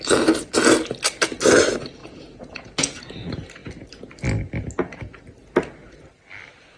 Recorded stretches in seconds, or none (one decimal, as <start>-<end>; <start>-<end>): 0.0-2.0; 3.0-6.8